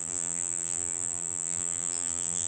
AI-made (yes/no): yes